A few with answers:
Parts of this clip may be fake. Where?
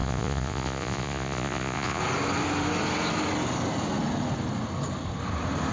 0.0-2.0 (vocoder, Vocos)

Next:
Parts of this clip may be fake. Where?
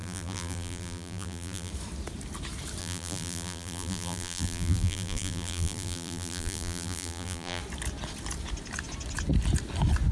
0.0-1.7 (vocoder, BigVGAN v2); 2.8-7.6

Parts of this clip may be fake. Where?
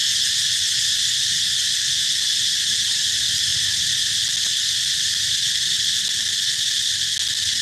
none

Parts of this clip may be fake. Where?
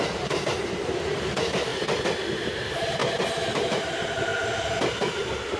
0.0-1.7 (vocoder, BigVGAN v2); 2.4-3.0; 3.6-4.3; 5.1-5.6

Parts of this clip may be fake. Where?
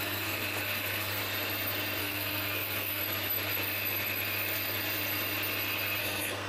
0.0-1.2 (codec, SNAC); 2.0-3.0; 6.0-6.5